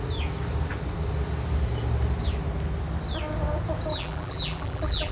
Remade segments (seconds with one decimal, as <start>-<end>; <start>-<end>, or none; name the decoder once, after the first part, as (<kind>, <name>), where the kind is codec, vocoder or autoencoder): 3.9-5.1 (vocoder, BigVGAN v2)